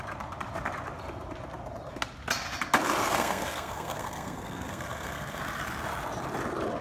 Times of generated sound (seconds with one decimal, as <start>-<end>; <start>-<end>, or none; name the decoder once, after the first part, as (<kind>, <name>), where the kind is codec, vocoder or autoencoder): 3.0-5.4 (codec, SNAC)